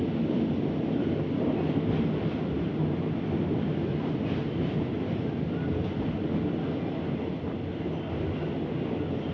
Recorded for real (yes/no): yes